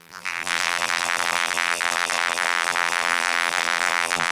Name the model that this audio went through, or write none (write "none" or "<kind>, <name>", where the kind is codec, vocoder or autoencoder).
vocoder, BigVGAN v2